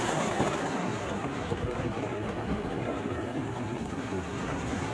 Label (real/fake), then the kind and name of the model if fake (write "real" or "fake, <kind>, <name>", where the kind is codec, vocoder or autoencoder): fake, codec, SNAC